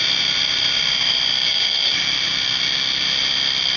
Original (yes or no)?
yes